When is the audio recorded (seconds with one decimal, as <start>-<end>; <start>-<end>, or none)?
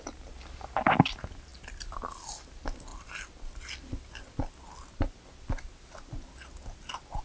0.0-7.2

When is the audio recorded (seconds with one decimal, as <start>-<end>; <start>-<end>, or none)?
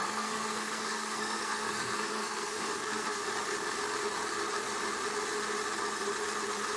3.2-6.8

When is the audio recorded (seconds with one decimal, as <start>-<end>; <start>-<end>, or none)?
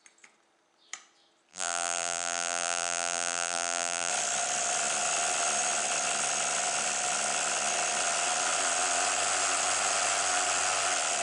0.0-1.5; 4.1-11.2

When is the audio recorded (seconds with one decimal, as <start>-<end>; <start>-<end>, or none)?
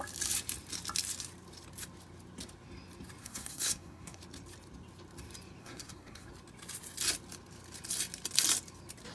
0.0-3.2; 4.2-5.6; 6.3-9.1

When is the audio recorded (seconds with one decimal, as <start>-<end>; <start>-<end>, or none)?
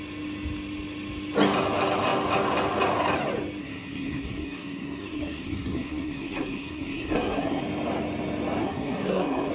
0.0-3.6; 7.6-8.6